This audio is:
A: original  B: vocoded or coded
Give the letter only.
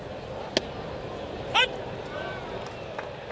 A